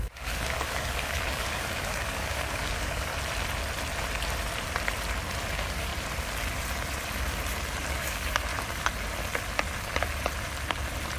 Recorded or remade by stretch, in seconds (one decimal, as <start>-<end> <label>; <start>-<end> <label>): 0.0-3.1 remade; 3.1-5.5 recorded; 5.5-5.9 remade; 5.9-7.9 recorded; 7.9-8.5 remade; 8.5-11.2 recorded